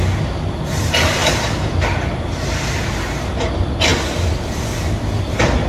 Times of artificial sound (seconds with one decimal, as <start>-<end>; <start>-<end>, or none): none